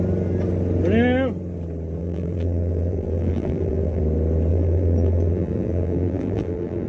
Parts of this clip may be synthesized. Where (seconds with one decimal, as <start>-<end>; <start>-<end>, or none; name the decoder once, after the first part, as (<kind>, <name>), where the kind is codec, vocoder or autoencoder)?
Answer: 2.0-4.0 (vocoder, BigVGAN v2); 4.5-6.9